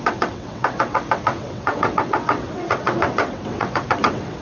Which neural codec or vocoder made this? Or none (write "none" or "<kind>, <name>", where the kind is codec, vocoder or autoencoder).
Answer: vocoder, WaveNeXt